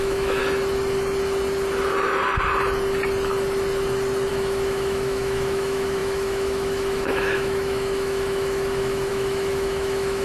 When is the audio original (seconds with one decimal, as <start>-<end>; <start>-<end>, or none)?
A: 0.4-4.3